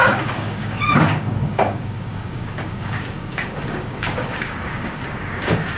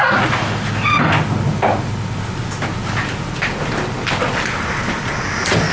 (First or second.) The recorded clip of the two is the second